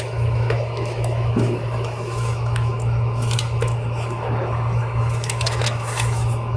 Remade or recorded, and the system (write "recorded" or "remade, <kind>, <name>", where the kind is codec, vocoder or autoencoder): remade, autoencoder, DAC-VAE